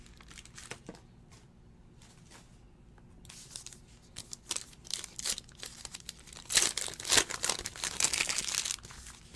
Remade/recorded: recorded